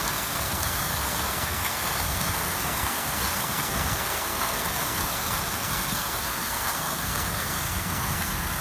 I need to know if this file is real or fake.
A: fake